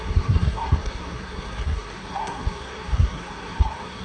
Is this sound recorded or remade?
remade